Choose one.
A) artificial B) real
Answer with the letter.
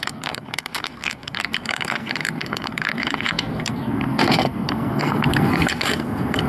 A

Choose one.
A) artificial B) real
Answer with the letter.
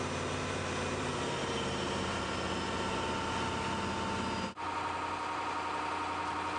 B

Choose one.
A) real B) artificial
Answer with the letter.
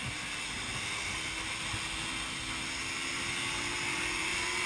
A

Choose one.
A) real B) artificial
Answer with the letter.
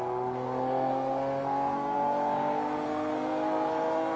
B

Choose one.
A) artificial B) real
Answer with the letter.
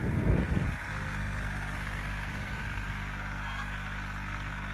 A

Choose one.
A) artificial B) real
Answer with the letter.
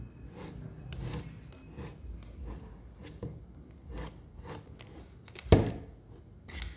B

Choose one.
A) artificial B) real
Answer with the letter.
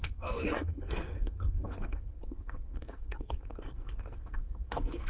A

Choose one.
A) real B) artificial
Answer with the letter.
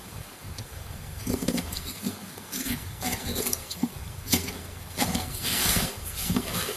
B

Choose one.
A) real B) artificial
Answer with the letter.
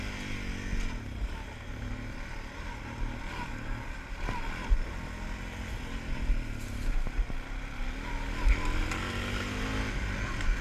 A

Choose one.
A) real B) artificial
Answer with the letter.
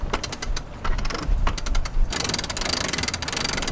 A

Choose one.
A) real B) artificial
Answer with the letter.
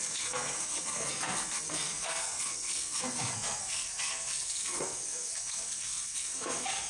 B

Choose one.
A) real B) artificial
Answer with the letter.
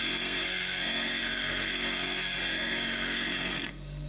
B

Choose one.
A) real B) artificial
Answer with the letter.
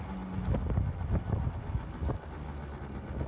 A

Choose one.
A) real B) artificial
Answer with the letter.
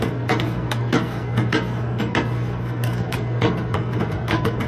B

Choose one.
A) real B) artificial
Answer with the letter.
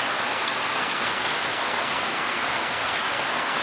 B